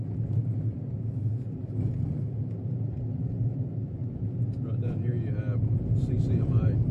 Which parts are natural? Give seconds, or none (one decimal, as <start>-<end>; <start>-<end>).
0.0-6.9

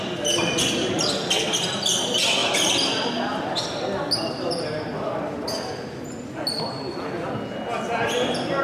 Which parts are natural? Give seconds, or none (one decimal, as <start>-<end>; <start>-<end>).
0.0-8.6

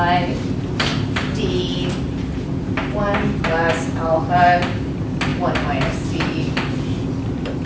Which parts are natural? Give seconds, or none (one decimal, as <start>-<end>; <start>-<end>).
0.0-7.7

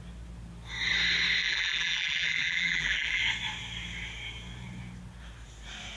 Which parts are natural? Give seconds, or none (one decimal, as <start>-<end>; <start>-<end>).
0.0-1.4; 3.2-6.0

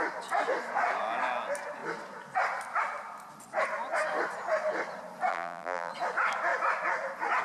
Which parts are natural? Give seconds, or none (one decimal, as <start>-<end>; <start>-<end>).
0.0-5.3; 5.9-7.4